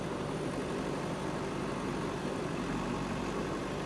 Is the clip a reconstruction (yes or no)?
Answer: no